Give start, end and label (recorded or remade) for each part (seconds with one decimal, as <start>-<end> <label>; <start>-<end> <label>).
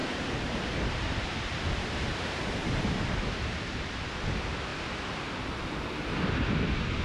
0.0-4.2 remade; 4.2-7.0 recorded